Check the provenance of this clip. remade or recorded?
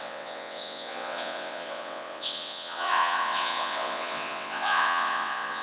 remade